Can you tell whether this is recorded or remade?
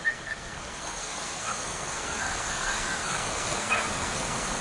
remade